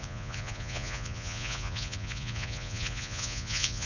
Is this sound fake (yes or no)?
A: yes